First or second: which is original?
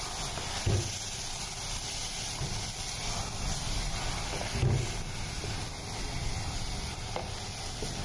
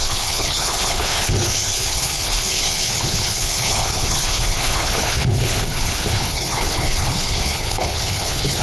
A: first